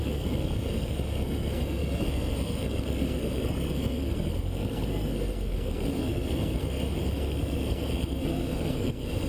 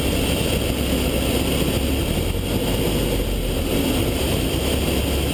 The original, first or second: second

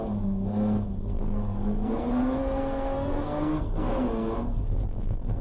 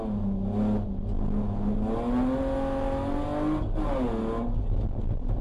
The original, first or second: second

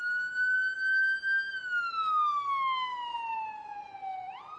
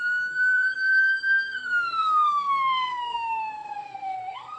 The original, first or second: first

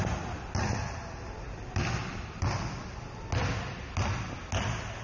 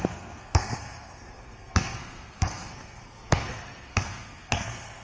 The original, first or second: first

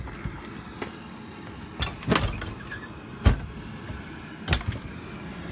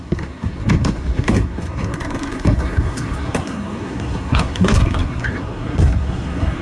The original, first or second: first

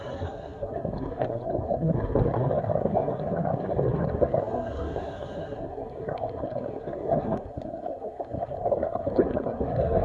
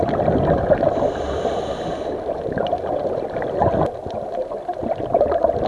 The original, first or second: second